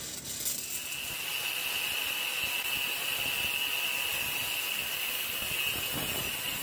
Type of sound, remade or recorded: recorded